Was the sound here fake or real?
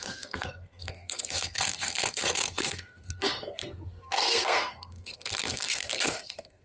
fake